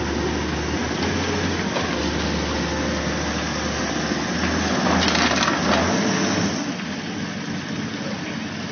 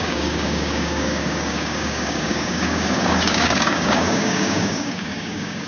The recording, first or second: first